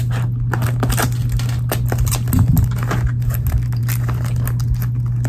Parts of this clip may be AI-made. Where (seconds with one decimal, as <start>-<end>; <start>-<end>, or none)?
none